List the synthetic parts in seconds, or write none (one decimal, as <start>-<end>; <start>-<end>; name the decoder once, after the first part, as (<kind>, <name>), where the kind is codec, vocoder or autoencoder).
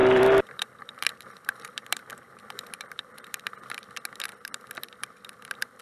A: 0.0-3.5 (vocoder, BigVGAN v2)